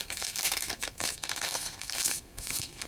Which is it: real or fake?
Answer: fake